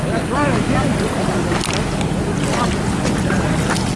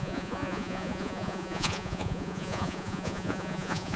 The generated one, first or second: second